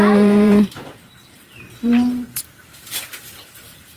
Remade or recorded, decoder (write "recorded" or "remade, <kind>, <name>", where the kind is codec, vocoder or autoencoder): remade, vocoder, BigVGAN v2